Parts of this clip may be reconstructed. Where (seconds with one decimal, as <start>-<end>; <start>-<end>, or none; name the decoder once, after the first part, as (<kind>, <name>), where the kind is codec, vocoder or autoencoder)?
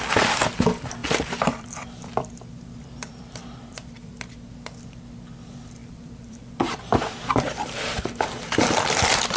1.0-2.3 (vocoder, BigVGAN v2); 3.0-4.1; 5.8-7.8